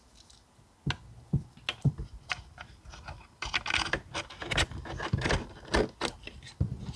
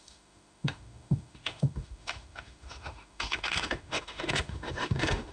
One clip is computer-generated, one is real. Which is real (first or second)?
first